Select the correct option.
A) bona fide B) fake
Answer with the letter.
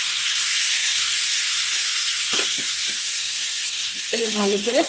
B